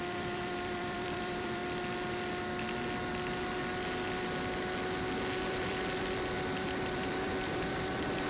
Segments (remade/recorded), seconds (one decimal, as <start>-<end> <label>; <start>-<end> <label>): 0.0-1.6 remade; 1.6-5.5 recorded; 5.5-8.3 remade